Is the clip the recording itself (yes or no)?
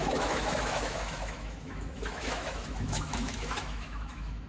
no